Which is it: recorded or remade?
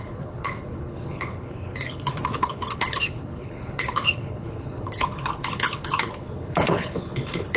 remade